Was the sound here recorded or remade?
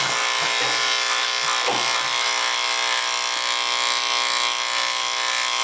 recorded